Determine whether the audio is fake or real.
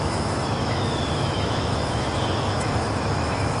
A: fake